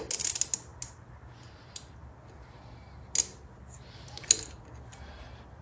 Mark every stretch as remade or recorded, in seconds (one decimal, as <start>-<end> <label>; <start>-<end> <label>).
0.0-5.6 recorded